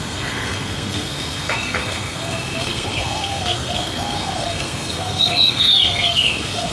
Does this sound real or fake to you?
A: fake